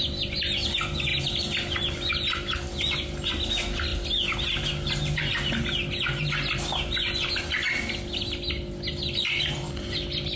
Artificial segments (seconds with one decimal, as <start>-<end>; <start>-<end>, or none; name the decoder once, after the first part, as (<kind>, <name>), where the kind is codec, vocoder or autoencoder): none